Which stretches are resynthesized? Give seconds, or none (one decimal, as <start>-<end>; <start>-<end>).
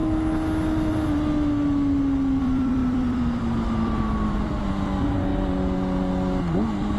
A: 2.4-5.3